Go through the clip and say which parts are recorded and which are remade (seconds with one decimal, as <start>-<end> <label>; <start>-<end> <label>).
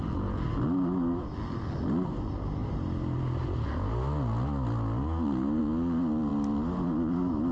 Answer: 0.0-7.5 recorded